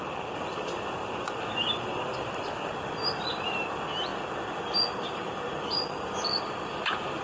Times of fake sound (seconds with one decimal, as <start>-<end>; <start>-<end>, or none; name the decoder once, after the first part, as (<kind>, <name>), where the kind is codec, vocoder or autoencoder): none

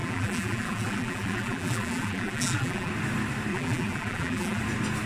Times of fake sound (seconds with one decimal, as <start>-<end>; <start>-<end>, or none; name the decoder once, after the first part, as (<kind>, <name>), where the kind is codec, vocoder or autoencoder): 0.0-2.9 (vocoder, BigVGAN v2); 3.5-4.6